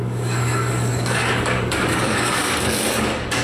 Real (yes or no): no